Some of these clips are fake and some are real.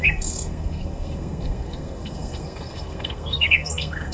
fake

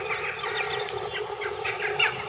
real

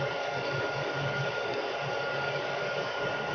fake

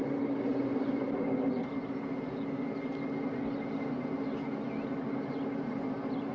real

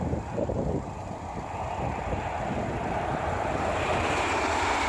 fake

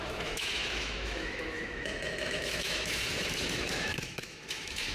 fake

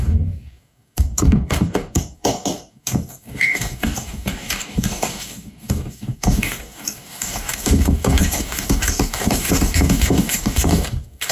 fake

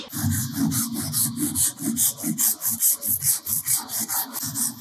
real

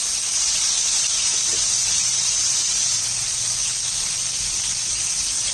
fake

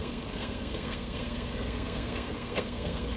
fake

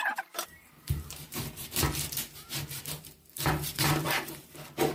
fake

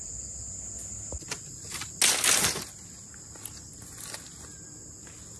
real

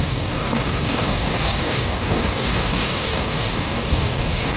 fake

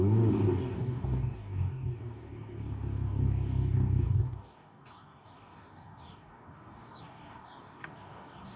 fake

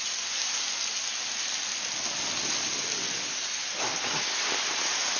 real